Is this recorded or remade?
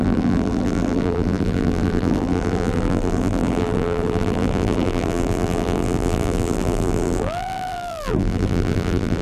remade